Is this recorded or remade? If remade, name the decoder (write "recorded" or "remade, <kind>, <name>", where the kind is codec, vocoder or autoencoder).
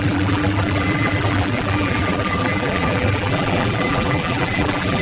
remade, vocoder, BigVGAN v2